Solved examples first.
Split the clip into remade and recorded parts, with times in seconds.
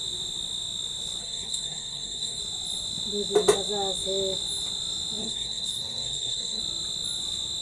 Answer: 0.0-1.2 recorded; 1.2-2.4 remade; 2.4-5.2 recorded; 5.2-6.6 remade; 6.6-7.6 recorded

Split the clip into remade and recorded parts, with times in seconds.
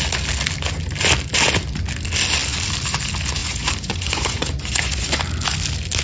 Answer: 0.0-3.4 recorded; 3.4-5.2 remade; 5.2-6.0 recorded